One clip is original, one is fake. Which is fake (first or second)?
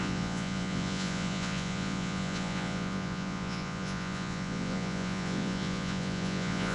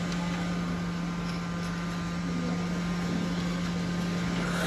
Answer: first